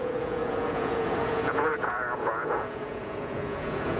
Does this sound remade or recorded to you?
remade